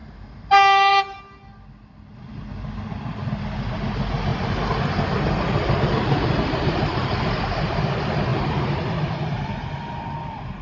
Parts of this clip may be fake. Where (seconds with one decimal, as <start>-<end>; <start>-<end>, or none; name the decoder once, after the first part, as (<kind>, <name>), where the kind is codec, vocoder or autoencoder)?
0.0-1.2 (vocoder, BigVGAN v2); 8.3-10.6

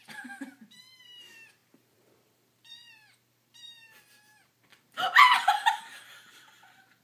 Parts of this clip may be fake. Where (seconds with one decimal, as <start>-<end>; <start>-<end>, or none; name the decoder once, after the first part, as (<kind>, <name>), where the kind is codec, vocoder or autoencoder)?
0.0-7.0 (vocoder, BigVGAN v2)

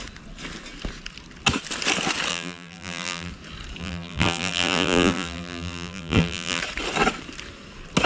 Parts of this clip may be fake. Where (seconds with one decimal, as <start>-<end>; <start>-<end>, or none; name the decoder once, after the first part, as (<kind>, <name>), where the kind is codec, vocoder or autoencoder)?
2.3-3.3 (vocoder, BigVGAN v2); 3.8-6.6

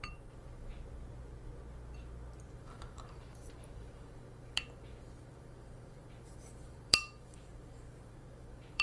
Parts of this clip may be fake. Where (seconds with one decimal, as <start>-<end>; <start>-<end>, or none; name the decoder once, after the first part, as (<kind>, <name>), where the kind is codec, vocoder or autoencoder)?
0.0-0.7 (vocoder, BigVGAN v2); 2.5-8.8

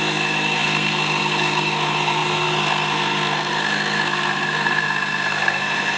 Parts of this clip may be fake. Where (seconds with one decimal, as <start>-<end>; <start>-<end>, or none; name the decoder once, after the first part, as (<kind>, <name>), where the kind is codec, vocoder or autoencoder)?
0.0-6.0 (codec, SNAC)

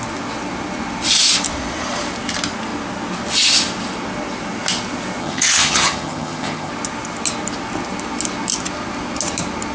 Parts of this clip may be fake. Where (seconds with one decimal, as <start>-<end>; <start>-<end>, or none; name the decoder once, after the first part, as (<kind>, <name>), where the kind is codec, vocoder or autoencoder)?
5.2-6.7 (vocoder, HiFi-GAN)

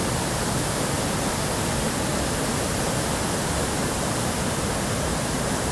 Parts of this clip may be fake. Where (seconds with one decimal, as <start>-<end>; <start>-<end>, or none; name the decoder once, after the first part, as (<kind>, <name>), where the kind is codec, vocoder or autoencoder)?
2.1-2.8 (vocoder, BigVGAN v2); 3.8-4.5

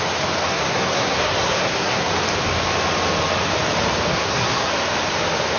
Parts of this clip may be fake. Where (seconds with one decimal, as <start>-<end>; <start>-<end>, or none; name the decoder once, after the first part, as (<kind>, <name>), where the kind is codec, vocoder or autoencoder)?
0.4-2.1 (codec, SNAC); 4.1-4.7